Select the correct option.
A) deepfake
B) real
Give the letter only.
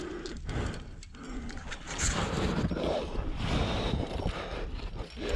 B